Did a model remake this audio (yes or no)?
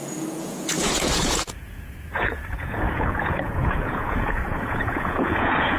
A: yes